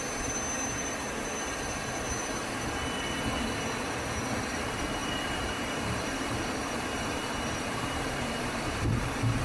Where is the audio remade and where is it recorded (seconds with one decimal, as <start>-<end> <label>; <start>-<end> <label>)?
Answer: 0.0-5.0 recorded; 5.0-9.4 remade